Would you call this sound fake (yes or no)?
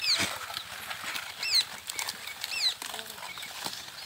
no